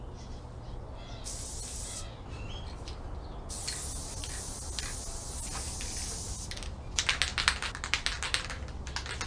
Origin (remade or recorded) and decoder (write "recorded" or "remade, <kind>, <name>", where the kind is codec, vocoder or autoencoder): recorded